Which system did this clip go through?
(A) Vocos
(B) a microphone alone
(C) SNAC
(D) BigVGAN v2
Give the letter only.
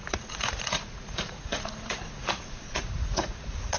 A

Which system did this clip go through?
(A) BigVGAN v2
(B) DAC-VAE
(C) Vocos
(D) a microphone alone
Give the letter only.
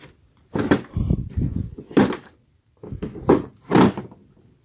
D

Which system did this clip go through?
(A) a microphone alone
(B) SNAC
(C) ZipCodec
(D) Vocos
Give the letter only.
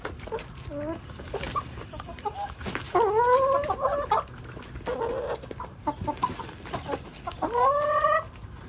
A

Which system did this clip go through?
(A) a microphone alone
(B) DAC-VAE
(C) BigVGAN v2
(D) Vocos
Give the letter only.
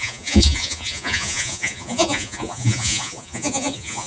D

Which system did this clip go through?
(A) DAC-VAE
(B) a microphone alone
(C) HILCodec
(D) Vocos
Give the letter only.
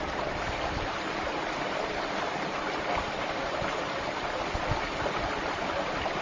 B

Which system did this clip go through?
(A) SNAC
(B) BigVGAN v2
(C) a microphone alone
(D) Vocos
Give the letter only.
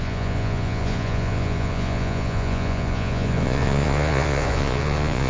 D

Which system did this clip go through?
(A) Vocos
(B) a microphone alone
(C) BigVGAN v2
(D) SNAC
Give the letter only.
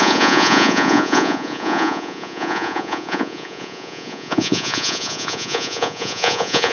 A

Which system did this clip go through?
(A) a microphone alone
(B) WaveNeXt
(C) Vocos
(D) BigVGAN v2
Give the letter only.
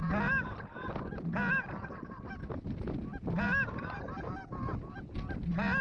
A